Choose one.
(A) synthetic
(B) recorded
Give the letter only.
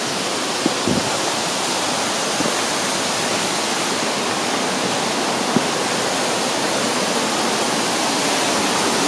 B